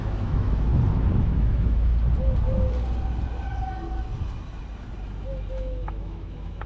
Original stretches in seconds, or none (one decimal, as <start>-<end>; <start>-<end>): 0.7-1.2; 1.9-5.5